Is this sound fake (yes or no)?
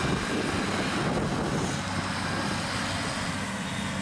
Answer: no